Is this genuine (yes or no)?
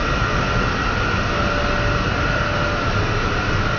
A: yes